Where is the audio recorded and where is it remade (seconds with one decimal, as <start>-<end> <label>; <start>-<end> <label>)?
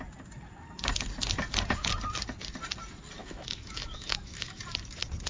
0.0-3.2 recorded; 3.2-4.6 remade; 4.6-5.3 recorded